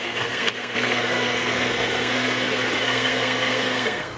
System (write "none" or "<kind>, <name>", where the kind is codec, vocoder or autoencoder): codec, SNAC